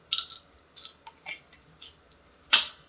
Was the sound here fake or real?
real